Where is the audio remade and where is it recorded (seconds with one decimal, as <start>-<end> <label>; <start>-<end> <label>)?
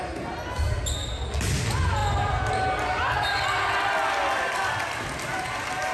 0.0-5.9 recorded